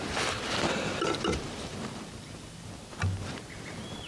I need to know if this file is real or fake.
fake